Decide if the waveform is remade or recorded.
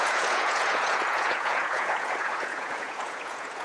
remade